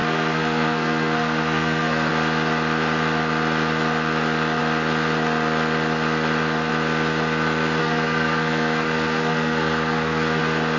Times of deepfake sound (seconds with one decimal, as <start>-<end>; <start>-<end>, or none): 0.0-2.1; 7.8-10.4